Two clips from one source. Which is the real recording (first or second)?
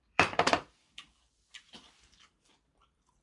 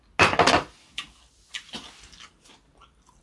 second